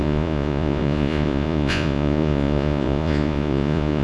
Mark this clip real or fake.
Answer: fake